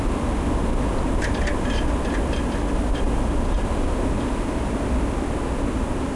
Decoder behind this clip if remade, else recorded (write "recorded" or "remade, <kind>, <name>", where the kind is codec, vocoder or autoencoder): recorded